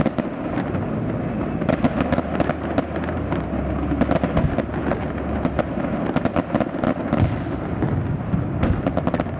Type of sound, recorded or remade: recorded